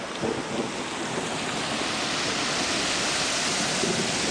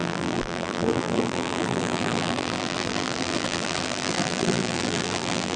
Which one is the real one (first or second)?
first